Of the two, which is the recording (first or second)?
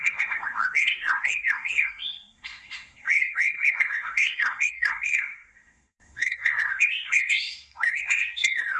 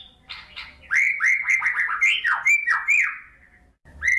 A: second